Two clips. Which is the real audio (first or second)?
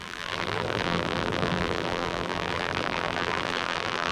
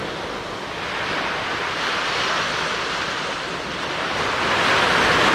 second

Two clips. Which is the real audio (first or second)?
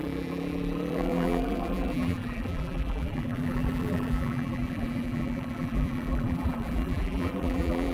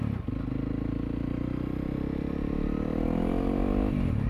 second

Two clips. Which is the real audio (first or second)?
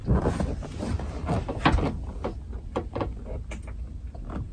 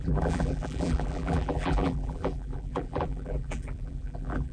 first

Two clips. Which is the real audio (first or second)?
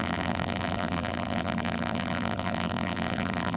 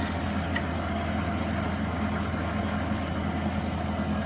second